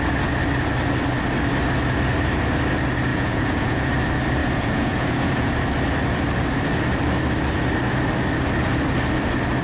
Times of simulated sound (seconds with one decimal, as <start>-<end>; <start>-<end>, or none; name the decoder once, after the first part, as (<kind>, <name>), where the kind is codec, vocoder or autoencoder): 3.1-3.9 (vocoder, Vocos); 4.4-5.5